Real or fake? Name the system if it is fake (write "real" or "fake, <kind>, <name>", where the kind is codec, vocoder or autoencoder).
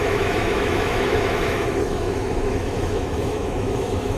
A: fake, autoencoder, DAC-VAE